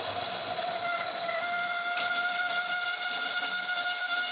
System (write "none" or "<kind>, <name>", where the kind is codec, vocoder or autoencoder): none